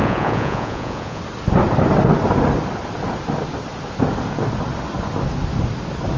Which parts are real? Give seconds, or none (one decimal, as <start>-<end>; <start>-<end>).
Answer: 1.2-6.2